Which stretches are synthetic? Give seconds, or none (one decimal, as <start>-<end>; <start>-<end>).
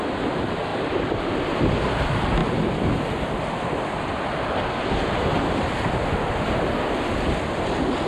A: none